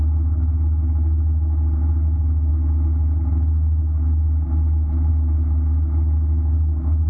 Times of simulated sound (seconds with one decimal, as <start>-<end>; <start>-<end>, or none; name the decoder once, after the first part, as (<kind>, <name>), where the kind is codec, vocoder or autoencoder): none